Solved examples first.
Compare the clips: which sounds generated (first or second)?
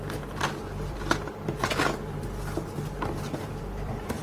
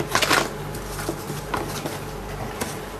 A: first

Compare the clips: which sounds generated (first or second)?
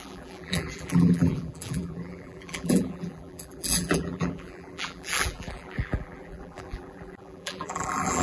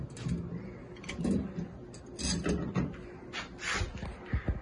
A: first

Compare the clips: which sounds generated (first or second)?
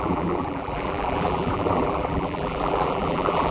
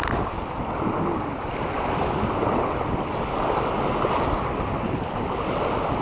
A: first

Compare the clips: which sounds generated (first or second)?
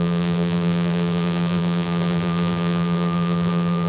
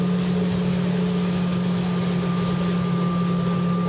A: first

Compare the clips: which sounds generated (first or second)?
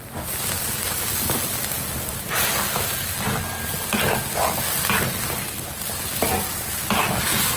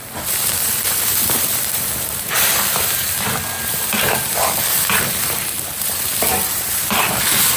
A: second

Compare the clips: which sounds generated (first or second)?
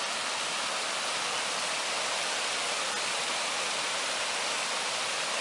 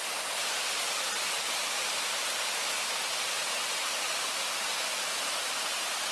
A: second